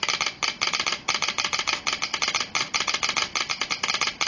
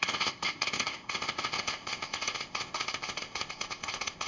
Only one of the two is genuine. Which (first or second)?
first